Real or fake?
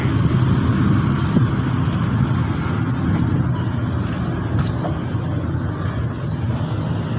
real